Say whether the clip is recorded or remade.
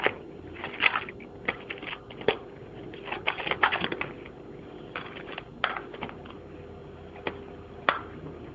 recorded